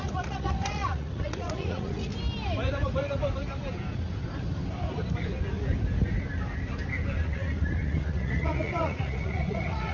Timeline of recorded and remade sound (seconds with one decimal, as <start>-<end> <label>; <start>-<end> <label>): 0.0-2.1 remade; 2.1-7.2 recorded; 7.2-9.9 remade